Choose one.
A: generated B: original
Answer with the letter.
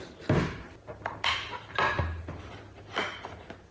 B